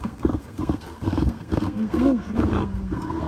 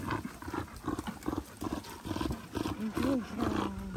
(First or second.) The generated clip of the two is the first